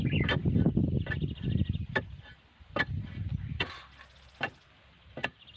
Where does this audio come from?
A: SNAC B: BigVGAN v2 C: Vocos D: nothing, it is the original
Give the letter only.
D